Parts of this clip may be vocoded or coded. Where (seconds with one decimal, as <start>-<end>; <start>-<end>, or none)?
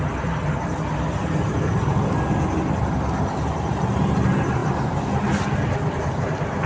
none